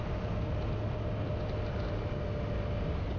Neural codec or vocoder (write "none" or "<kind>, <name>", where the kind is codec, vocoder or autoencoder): none